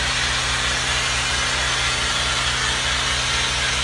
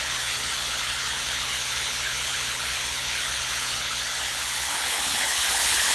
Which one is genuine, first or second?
first